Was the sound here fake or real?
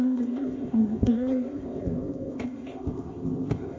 fake